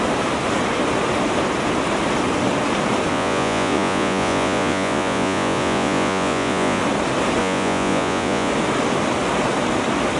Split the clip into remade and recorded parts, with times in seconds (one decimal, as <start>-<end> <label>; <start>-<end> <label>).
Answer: 0.0-3.1 recorded; 3.1-6.8 remade; 6.8-7.4 recorded; 7.4-8.5 remade; 8.5-10.2 recorded